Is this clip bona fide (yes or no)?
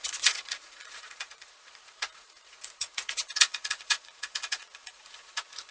no